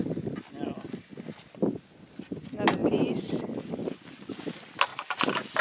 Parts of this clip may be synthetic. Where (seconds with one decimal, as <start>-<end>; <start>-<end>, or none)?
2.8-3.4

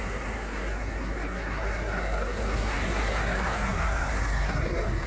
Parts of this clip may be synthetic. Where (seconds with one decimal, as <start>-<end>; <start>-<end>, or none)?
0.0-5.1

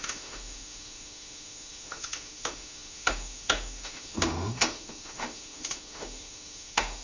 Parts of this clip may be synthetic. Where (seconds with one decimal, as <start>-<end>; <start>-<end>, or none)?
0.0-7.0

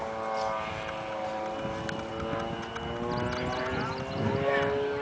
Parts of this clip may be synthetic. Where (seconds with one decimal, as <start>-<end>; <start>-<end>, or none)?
none

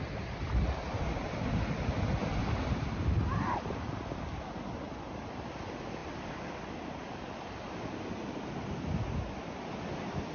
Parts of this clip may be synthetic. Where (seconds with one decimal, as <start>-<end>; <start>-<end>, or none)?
none